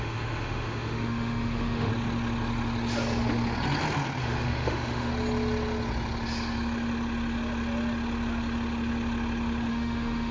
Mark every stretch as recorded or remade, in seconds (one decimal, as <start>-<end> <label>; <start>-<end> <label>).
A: 0.0-1.9 remade; 1.9-4.2 recorded; 4.2-5.1 remade; 5.1-9.7 recorded; 9.7-10.3 remade